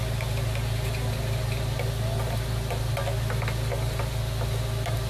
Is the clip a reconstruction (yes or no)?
no